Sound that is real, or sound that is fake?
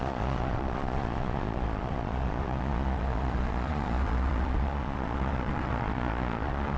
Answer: fake